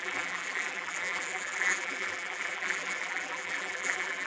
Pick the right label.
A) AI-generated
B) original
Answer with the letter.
A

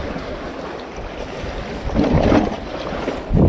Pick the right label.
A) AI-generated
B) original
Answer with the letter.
B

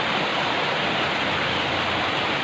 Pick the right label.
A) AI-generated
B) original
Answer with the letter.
B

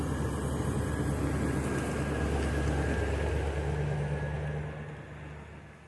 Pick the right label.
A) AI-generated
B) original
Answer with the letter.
B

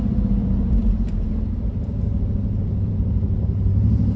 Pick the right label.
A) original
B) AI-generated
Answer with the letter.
B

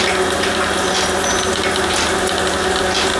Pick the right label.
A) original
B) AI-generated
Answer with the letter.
A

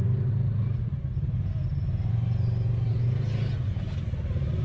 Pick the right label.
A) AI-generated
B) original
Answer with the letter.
B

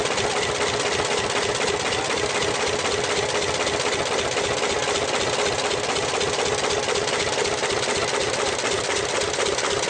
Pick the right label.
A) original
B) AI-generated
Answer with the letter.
A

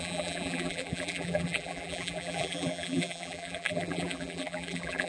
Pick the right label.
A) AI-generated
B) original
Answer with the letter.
A